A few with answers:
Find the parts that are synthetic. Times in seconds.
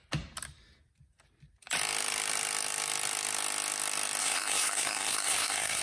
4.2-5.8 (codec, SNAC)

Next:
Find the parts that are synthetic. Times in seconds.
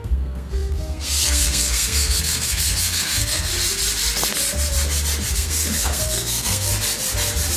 0.0-3.5 (codec, SNAC); 5.3-6.7